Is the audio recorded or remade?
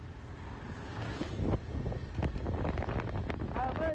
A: recorded